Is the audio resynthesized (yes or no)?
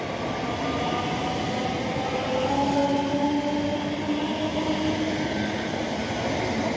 no